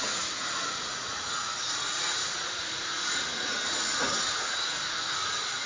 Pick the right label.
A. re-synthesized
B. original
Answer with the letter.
A